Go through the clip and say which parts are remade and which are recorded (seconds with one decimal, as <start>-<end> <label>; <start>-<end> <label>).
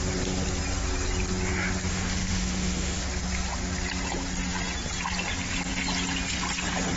0.0-1.9 recorded; 1.9-3.0 remade; 3.0-7.0 recorded